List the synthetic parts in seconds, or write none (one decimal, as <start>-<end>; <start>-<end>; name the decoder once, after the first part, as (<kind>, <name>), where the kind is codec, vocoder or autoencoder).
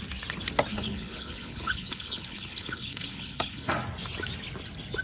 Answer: 0.7-3.7 (codec, HILCodec)